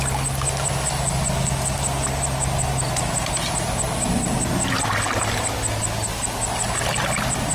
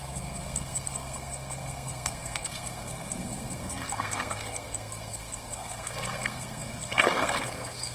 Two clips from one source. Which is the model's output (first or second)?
second